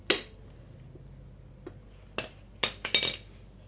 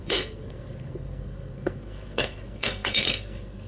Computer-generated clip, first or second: second